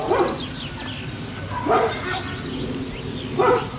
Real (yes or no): yes